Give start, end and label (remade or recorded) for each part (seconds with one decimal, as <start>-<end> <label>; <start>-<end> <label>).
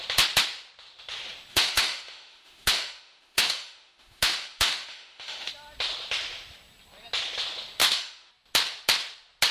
0.0-1.5 recorded; 1.5-5.5 remade; 5.5-7.8 recorded; 7.8-8.3 remade; 8.3-9.5 recorded